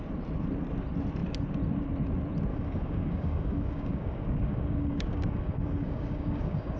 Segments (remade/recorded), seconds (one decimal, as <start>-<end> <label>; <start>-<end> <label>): 0.0-2.5 recorded; 2.5-6.8 remade